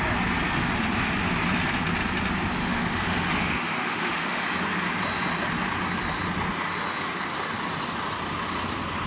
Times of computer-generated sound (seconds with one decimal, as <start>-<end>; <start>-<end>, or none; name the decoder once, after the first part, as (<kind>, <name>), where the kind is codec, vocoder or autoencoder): 2.6-4.4 (autoencoder, DAC-VAE)